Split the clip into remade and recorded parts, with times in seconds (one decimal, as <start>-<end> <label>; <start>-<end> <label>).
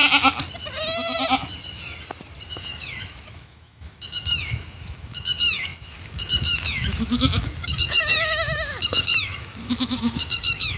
0.0-2.5 recorded; 2.5-10.8 remade